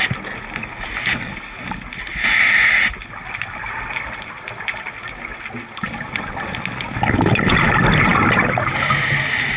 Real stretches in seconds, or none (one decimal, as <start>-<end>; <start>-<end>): 0.0-9.6